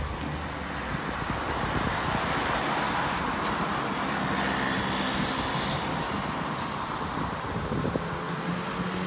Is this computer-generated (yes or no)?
no